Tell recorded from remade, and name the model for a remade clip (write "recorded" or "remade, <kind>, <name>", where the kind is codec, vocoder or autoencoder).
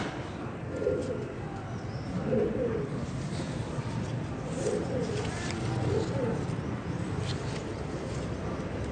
remade, vocoder, BigVGAN v2